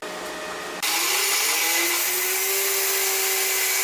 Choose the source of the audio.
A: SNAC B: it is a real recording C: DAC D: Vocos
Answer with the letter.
B